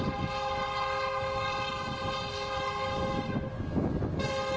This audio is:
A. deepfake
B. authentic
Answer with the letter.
B